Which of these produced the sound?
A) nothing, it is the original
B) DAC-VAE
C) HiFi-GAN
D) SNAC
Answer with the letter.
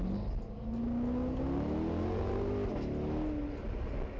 A